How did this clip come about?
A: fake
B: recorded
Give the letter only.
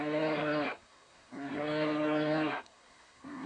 A